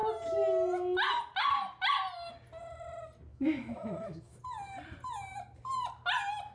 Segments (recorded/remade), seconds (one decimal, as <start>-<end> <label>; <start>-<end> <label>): 0.0-3.3 recorded; 3.3-4.4 remade; 4.4-6.5 recorded